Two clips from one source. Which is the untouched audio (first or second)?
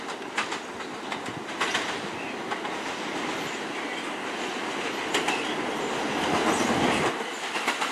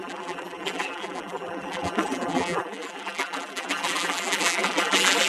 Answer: first